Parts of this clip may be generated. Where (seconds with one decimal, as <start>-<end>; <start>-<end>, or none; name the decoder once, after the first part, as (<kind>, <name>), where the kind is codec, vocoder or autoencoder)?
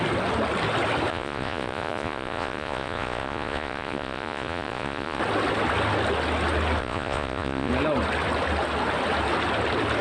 1.1-5.2 (vocoder, Vocos); 6.8-7.7